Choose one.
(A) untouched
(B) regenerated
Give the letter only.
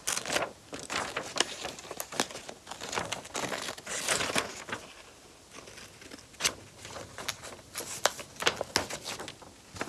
A